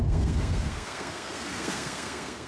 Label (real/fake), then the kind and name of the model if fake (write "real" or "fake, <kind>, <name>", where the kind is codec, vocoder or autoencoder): fake, codec, SNAC